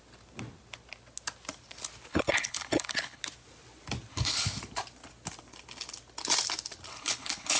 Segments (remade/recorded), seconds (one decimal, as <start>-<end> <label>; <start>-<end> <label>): 0.0-2.1 recorded; 2.1-3.2 remade; 3.2-4.1 recorded; 4.1-4.6 remade; 4.6-6.9 recorded; 6.9-7.6 remade